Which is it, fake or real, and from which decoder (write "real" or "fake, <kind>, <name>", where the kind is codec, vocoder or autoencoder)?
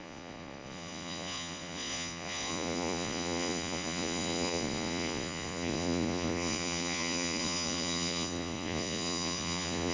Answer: fake, vocoder, Vocos